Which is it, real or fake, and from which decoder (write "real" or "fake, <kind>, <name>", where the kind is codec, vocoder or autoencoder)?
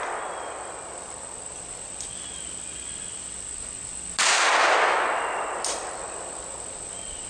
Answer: real